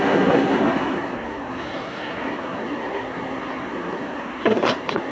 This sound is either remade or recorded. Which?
remade